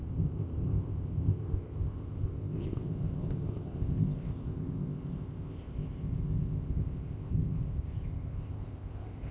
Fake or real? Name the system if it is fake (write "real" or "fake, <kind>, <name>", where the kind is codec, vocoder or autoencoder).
fake, codec, ZipCodec